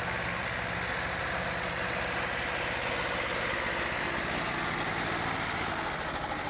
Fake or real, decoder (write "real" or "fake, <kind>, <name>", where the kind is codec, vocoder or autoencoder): real